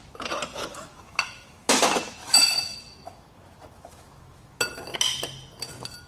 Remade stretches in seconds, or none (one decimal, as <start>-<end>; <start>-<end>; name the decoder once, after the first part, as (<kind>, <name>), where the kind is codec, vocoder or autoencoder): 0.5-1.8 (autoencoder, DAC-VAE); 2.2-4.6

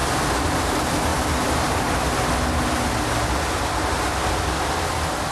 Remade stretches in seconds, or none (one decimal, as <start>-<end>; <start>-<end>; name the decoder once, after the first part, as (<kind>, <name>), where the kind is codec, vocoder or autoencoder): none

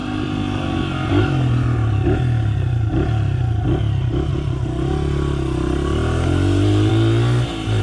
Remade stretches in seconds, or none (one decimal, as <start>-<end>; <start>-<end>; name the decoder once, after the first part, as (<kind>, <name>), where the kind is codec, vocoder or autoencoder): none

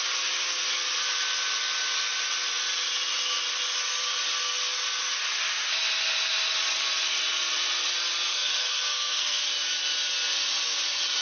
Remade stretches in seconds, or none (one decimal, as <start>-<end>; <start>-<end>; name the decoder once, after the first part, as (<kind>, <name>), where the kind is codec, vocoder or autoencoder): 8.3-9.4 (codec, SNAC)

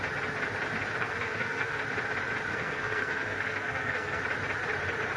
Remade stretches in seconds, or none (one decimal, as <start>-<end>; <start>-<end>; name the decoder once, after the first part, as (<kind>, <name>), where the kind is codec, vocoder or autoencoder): 1.0-1.8 (codec, SNAC); 2.5-4.2

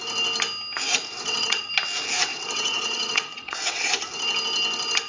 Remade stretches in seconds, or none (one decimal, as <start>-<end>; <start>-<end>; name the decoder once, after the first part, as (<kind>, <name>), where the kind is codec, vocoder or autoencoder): 1.1-1.7 (vocoder, WaveNeXt); 2.3-3.9